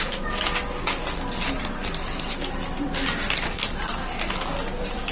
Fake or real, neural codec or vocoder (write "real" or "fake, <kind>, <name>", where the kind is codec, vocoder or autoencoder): real